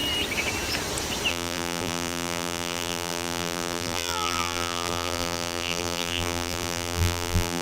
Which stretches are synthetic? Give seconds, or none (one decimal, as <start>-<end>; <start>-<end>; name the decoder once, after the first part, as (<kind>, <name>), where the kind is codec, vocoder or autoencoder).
1.3-7.6 (vocoder, BigVGAN v2)